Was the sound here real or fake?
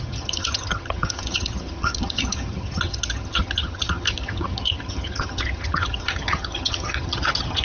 fake